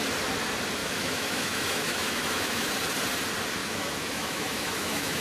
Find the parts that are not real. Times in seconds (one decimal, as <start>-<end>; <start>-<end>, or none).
0.8-2.7; 3.6-5.2